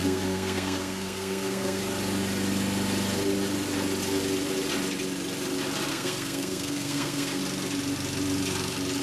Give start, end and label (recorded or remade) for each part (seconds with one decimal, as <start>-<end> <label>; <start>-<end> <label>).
0.0-1.8 remade; 1.8-5.9 recorded; 5.9-7.4 remade; 7.4-9.0 recorded